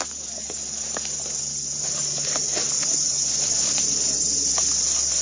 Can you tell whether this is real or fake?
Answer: real